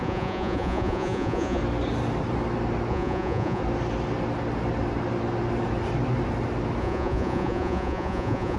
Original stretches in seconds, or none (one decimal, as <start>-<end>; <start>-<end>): 1.6-2.9; 3.6-6.8